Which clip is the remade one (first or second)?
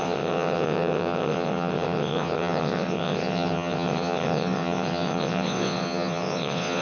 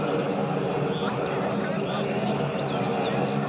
first